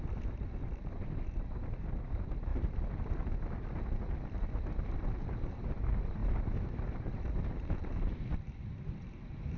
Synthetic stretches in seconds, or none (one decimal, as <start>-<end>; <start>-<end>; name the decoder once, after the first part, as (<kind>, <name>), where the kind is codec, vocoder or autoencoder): 0.0-2.5 (vocoder, BigVGAN v2); 4.8-6.2; 7.3-9.6